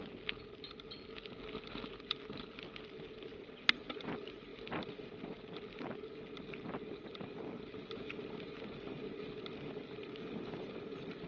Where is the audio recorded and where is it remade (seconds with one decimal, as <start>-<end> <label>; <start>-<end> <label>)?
0.0-11.3 recorded